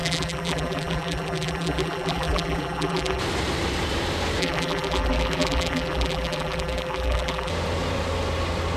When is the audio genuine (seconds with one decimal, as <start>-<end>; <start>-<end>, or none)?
3.2-4.4; 7.5-8.8

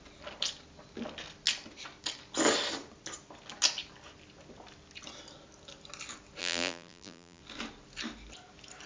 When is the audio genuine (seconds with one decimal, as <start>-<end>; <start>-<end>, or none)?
0.0-6.4; 7.4-8.9

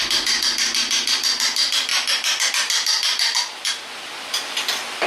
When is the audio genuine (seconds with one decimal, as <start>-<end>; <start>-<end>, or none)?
0.0-1.9; 2.5-5.1

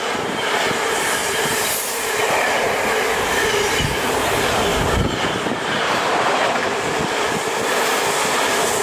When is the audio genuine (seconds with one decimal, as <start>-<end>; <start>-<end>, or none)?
0.0-1.2; 2.3-4.7; 6.5-8.8